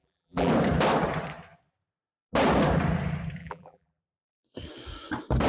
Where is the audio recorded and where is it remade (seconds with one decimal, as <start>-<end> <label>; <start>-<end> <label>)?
0.0-0.5 remade; 0.5-3.4 recorded; 3.4-4.0 remade; 4.0-5.5 recorded